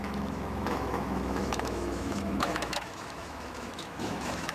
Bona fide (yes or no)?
no